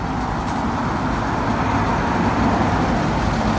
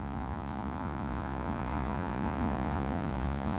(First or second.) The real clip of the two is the first